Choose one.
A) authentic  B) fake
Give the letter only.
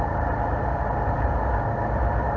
A